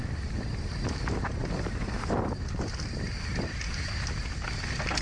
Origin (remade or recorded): recorded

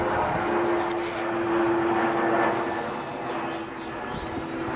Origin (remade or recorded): recorded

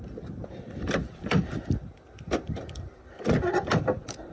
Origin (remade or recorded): remade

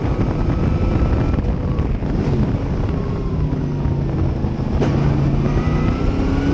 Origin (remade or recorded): recorded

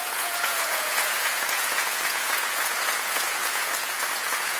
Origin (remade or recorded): remade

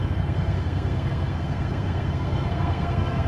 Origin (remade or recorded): remade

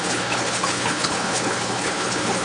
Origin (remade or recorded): remade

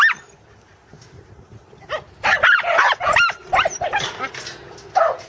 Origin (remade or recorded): recorded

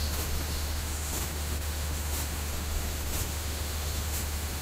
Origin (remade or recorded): remade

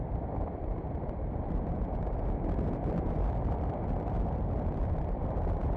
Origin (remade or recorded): remade